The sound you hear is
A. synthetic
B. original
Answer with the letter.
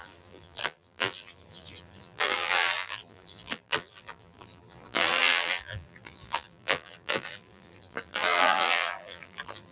A